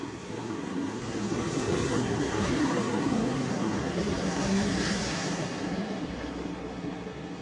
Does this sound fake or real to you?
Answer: fake